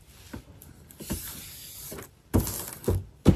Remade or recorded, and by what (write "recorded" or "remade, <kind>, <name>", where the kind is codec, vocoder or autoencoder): recorded